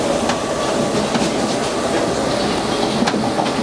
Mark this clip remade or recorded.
recorded